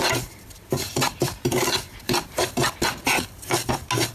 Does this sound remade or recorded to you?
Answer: recorded